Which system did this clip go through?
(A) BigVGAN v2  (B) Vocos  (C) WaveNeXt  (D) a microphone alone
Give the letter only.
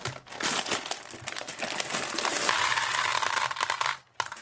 D